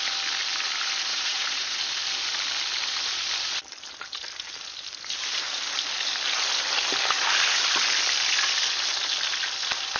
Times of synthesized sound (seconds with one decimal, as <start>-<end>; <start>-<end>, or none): 1.1-1.8